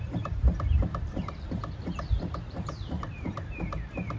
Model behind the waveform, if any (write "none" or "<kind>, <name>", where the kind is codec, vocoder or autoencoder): vocoder, BigVGAN v2